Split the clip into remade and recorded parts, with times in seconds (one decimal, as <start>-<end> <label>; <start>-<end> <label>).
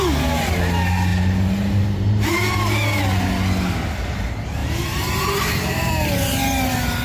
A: 0.0-1.1 recorded; 1.1-2.7 remade; 2.7-4.6 recorded; 4.6-5.9 remade; 5.9-7.0 recorded